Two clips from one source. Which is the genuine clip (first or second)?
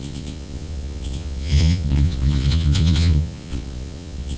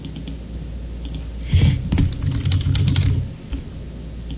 second